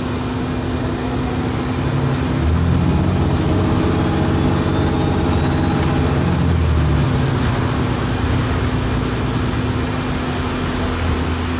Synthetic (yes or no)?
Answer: no